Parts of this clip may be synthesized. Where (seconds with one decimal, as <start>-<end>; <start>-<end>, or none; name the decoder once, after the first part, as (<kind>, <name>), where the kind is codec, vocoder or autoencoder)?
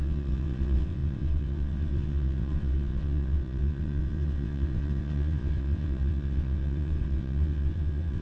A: 0.0-8.2 (vocoder, WaveNeXt)